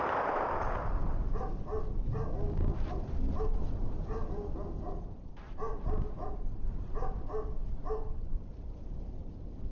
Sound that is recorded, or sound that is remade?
recorded